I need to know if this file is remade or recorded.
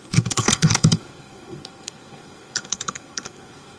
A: remade